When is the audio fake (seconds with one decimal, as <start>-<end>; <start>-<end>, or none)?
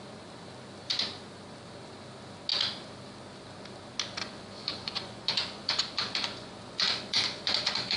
4.2-8.0